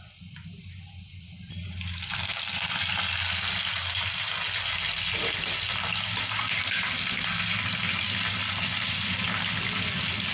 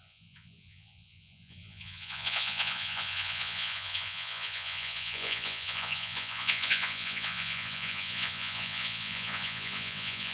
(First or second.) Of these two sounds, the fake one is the second